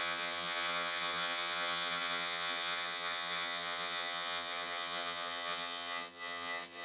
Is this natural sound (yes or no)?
no